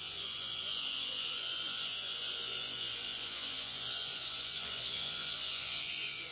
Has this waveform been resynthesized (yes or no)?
yes